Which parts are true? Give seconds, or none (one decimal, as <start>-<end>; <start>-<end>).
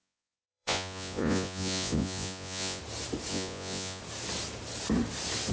2.8-3.3; 4.0-5.5